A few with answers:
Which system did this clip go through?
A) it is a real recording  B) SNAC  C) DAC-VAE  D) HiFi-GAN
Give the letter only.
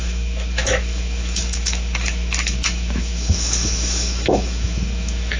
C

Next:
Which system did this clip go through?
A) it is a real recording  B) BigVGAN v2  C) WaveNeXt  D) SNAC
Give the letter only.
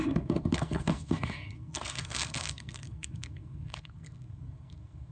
D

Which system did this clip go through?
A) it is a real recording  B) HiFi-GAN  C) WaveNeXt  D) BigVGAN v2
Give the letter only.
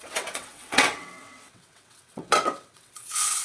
C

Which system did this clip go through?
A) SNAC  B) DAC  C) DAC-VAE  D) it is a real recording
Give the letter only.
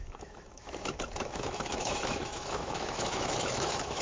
C